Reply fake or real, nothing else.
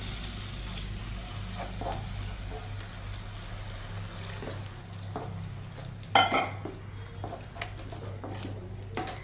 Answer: real